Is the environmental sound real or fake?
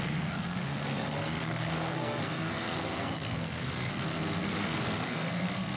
fake